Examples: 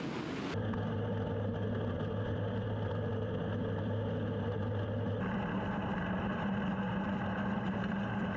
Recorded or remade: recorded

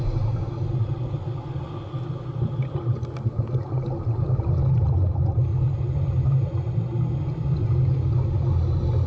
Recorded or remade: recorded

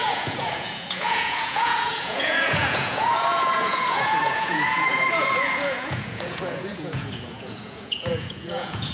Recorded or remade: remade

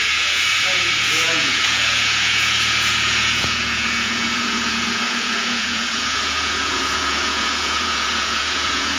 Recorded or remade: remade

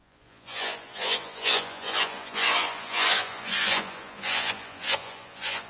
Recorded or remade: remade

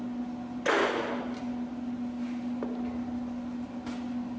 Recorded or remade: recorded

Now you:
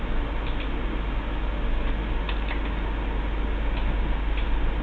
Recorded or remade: recorded